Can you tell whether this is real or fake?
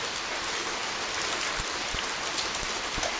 real